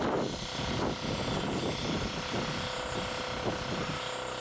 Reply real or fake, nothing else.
real